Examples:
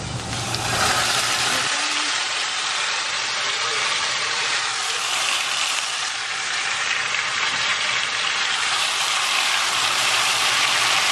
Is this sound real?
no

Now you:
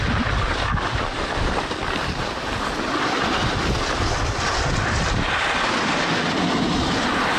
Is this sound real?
no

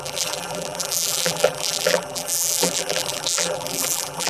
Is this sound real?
no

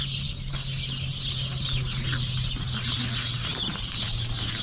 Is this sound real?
yes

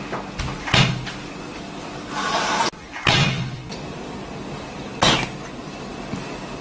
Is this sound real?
yes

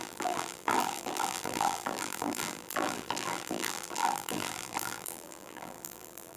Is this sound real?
no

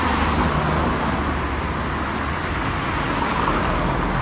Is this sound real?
yes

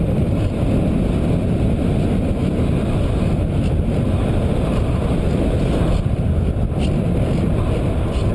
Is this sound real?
yes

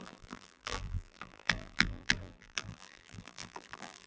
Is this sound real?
no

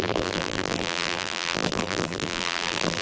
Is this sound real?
no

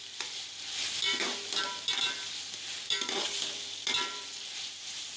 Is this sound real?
no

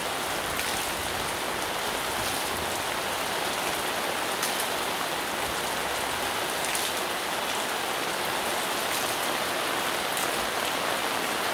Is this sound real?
yes